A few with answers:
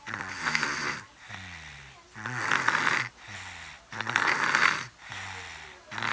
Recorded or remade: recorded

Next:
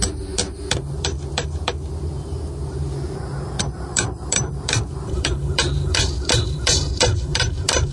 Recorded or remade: remade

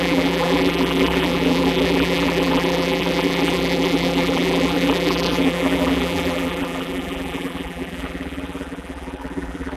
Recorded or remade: remade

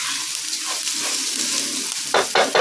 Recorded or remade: recorded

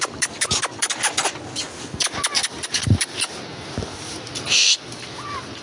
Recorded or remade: remade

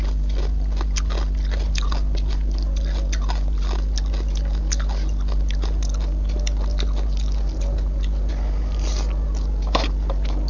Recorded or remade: recorded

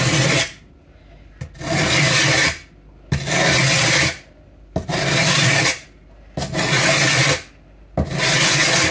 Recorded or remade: recorded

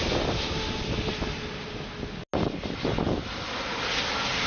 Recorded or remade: recorded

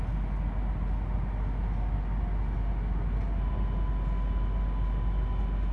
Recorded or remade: recorded